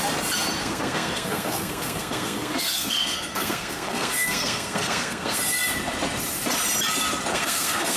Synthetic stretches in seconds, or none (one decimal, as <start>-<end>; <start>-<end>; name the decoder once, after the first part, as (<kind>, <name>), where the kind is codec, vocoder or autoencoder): 0.6-5.4 (codec, SNAC); 7.3-8.0